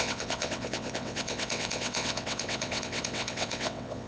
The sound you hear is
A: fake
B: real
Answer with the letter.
A